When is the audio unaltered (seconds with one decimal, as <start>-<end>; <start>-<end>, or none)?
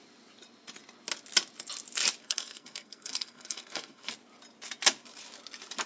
0.0-2.2; 4.1-5.9